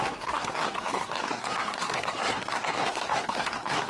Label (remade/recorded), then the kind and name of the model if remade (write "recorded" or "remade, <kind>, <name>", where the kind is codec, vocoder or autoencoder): remade, codec, SNAC